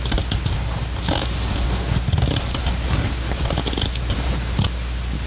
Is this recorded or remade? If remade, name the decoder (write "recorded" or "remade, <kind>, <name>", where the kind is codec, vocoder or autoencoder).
recorded